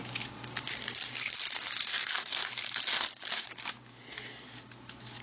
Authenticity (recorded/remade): recorded